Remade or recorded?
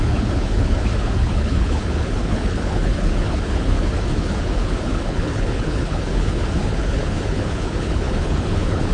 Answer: remade